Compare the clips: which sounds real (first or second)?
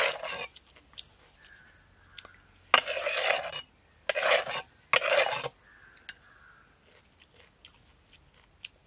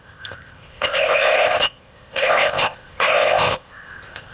first